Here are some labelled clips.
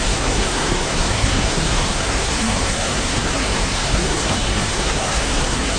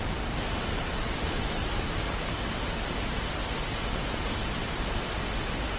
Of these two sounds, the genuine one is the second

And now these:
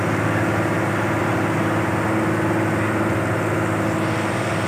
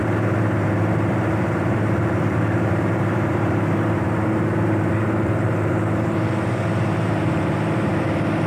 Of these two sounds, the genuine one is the first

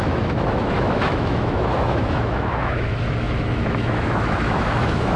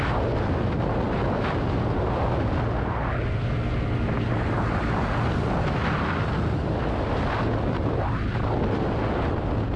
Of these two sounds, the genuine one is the second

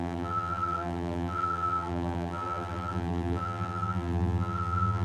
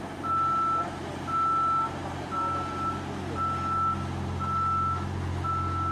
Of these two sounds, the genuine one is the second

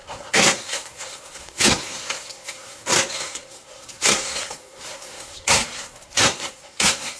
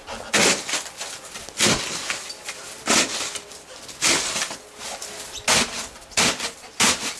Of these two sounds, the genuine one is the second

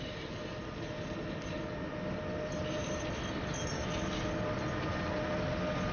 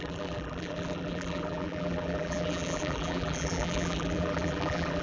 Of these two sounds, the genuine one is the first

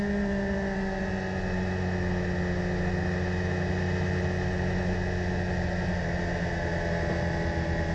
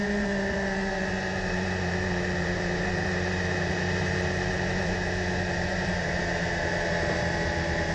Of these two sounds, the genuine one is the first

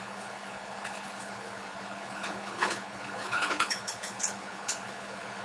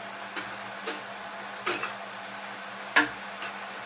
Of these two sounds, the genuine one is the second